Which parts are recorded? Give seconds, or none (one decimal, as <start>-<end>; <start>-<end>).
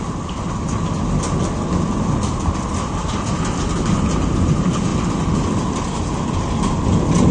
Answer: 0.0-7.3